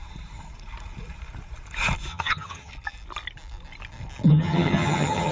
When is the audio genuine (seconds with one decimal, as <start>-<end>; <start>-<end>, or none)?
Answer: 0.0-2.1; 2.7-4.3